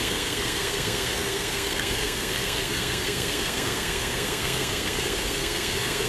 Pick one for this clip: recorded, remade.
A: remade